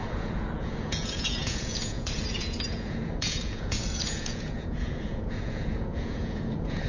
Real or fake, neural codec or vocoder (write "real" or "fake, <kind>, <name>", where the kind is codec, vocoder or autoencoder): fake, vocoder, Vocos